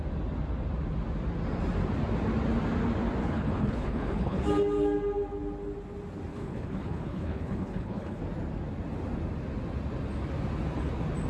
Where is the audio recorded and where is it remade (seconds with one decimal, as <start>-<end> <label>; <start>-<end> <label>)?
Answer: 0.0-3.2 recorded; 3.2-4.4 remade; 4.4-6.3 recorded; 6.3-8.2 remade; 8.2-11.3 recorded